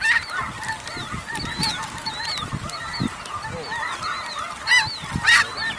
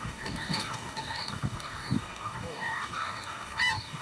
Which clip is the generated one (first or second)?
second